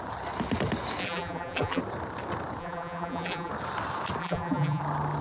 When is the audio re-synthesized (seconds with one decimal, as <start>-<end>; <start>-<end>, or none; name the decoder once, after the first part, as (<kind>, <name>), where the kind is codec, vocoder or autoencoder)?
1.0-1.8 (vocoder, BigVGAN v2); 2.6-3.5; 4.2-4.8